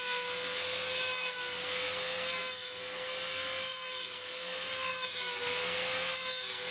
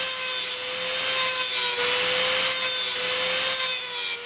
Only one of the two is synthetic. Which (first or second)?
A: first